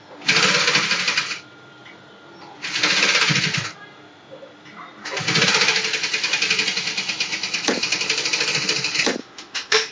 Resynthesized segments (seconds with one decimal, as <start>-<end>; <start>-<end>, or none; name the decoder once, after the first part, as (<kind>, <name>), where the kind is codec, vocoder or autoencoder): 9.2-9.9 (autoencoder, DAC-VAE)